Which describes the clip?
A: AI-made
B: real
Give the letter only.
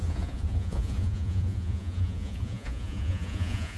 A